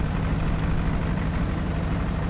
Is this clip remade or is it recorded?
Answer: recorded